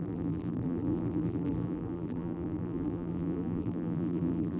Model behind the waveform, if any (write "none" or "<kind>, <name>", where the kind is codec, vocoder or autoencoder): vocoder, BigVGAN v2